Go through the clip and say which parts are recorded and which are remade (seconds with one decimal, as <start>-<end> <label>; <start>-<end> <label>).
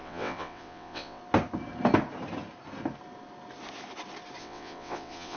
0.0-1.2 remade; 1.2-4.4 recorded; 4.4-5.4 remade